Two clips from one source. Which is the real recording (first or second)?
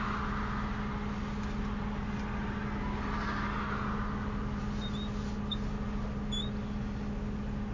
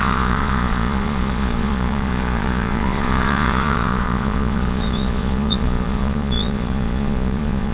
first